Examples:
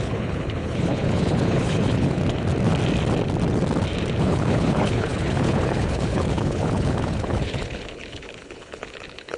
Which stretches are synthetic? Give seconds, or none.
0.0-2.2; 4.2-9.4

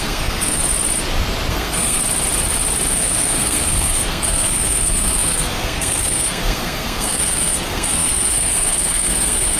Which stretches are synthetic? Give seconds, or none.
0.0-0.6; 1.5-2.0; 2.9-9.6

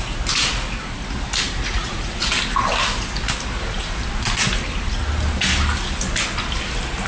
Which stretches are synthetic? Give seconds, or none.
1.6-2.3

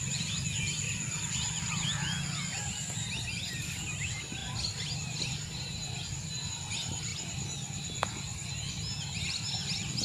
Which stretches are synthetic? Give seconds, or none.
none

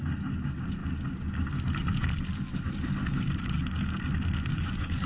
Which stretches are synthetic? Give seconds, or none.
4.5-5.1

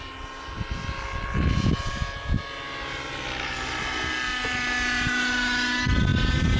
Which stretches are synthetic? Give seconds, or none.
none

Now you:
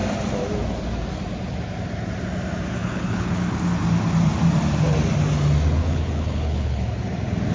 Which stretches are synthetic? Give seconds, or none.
2.8-3.4; 5.8-6.8

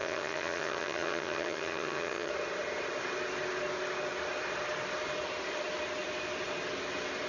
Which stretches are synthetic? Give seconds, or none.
0.0-2.3